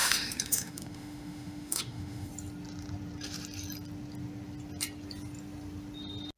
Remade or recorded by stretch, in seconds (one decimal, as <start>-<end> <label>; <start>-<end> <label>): 0.0-2.3 remade; 2.3-6.4 recorded